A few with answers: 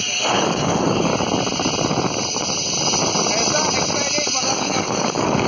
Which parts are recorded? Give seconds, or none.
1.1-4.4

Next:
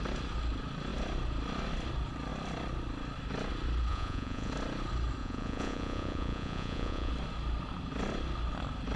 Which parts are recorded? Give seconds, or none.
0.0-3.9; 4.5-5.2; 7.1-9.0

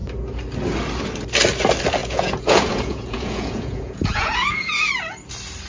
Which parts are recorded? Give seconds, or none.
0.0-2.0; 4.9-5.7